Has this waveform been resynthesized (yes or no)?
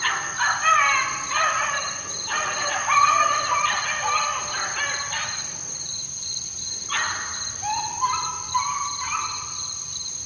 no